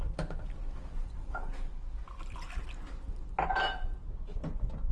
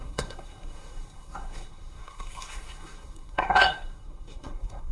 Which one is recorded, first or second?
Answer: first